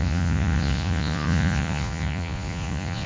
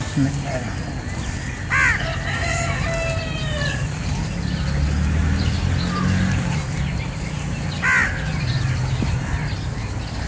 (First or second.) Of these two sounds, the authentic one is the second